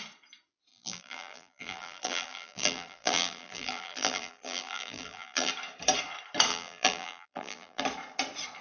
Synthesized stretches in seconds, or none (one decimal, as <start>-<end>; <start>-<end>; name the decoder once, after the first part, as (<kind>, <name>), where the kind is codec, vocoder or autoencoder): 0.7-5.5 (vocoder, BigVGAN v2); 6.5-7.8